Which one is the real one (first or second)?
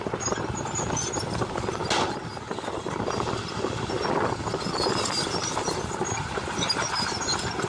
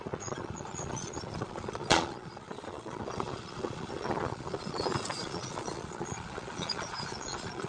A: first